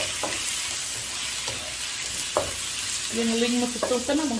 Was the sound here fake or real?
real